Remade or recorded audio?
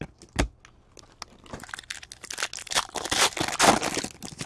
recorded